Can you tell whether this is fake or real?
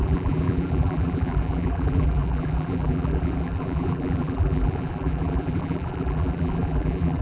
fake